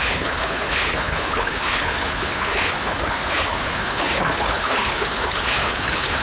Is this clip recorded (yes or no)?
no